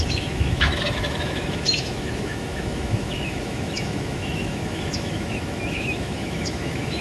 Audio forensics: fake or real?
fake